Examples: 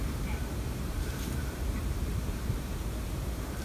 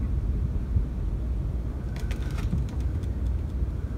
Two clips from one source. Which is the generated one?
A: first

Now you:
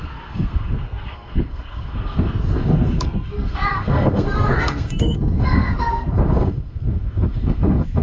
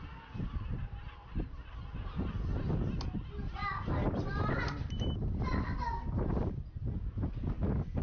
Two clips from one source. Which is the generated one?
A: first